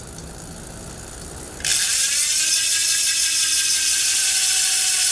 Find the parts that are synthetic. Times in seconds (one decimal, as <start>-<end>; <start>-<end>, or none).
none

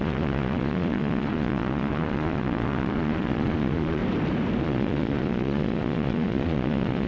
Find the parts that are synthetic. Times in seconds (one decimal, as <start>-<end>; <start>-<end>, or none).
0.0-4.0; 4.6-7.1

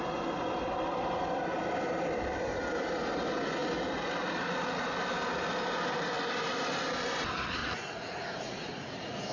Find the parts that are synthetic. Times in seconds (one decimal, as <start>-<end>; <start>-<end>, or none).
7.6-9.3

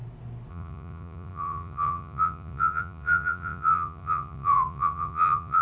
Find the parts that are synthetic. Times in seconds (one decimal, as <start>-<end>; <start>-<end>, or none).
0.5-5.6